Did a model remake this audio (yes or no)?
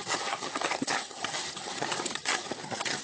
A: yes